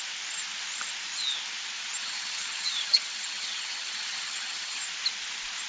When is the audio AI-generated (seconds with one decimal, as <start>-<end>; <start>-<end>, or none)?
2.0-4.8